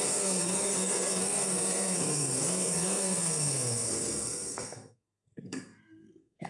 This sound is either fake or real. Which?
fake